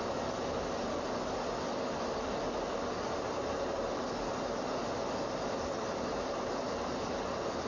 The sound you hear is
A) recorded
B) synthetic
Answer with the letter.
A